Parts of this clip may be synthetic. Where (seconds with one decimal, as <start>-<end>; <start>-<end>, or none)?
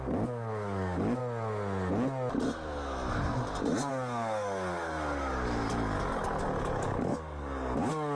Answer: 0.0-1.2; 3.9-8.2